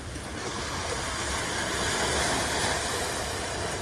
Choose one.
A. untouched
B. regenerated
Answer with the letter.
A